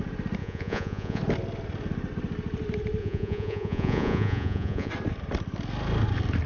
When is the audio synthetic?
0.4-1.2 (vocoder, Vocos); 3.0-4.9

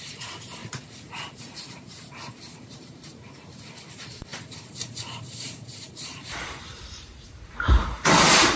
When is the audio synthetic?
0.0-0.6 (vocoder, BigVGAN v2); 1.3-8.6

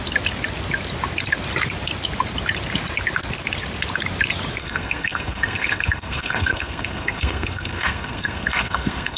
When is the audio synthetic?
4.6-9.2 (codec, SNAC)

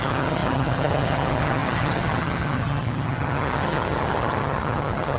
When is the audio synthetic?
0.0-5.2 (vocoder, HiFi-GAN)

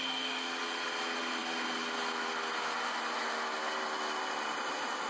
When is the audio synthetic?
none

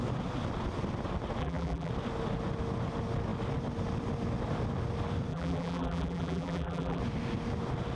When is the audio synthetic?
1.4-1.9 (vocoder, BigVGAN v2); 5.3-7.0

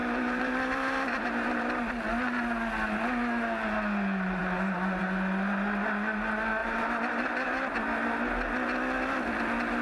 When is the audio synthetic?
0.0-1.9 (vocoder, BigVGAN v2); 6.6-7.8